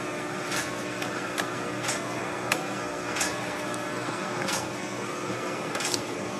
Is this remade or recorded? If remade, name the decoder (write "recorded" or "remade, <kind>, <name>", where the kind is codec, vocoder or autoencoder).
remade, codec, SNAC